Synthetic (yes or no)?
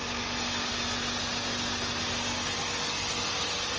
no